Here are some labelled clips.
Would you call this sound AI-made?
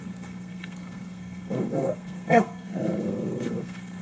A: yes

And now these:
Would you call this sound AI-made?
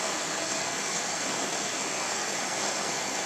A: yes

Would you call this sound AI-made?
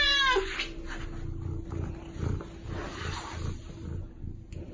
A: no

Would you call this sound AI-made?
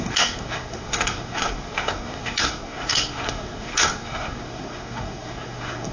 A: yes